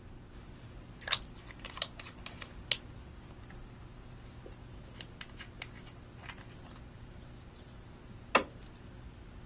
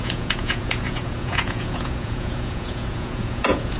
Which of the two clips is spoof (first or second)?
second